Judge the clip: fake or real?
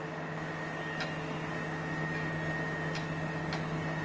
real